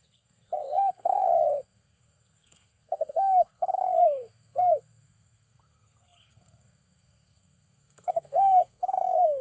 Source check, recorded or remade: remade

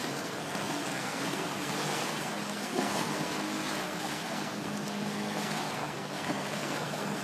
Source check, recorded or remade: remade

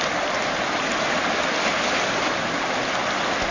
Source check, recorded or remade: recorded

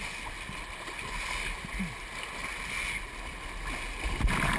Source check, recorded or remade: recorded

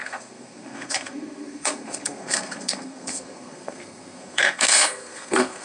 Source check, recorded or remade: remade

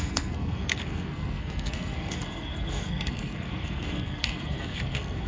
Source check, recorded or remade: remade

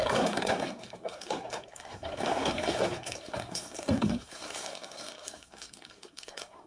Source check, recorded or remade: remade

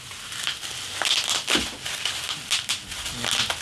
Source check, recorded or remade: recorded